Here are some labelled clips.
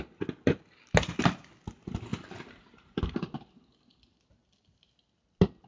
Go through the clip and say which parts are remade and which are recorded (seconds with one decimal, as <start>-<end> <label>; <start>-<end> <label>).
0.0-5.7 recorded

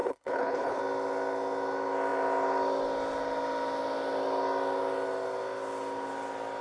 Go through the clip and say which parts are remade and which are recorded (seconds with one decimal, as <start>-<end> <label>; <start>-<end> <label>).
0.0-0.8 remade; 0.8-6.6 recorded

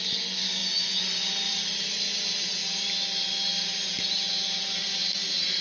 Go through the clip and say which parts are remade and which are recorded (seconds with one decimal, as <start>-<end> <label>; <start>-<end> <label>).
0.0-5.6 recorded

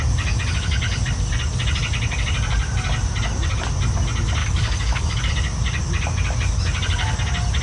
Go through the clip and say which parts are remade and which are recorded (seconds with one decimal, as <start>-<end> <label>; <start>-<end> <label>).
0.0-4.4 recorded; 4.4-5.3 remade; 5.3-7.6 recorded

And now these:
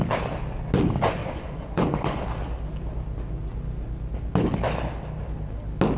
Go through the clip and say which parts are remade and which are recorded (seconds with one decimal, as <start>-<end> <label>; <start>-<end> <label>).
0.0-1.2 recorded; 1.2-2.2 remade; 2.2-6.0 recorded